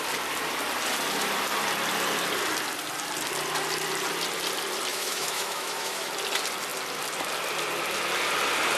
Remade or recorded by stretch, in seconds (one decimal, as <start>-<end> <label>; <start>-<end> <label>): 0.0-4.9 recorded; 4.9-6.1 remade; 6.1-8.8 recorded